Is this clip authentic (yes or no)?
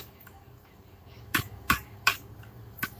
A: no